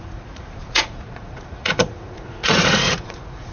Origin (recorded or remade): remade